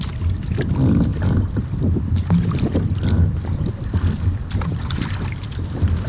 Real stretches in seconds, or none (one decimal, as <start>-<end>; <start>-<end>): none